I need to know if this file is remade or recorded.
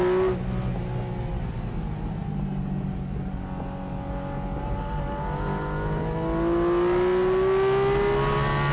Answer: recorded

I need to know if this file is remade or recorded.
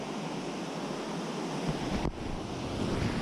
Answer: recorded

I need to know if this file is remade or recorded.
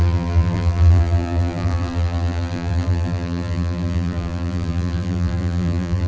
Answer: remade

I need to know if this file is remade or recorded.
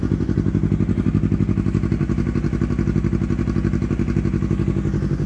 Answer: recorded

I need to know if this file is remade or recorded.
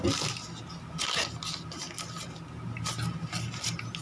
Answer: recorded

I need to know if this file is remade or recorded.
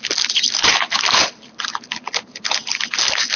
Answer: recorded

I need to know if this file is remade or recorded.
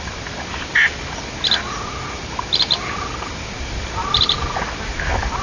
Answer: recorded